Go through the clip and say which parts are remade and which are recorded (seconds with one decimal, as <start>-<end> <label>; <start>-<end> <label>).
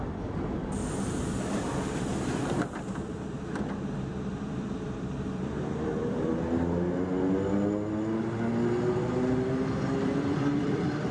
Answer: 0.0-6.3 remade; 6.3-9.8 recorded; 9.8-11.1 remade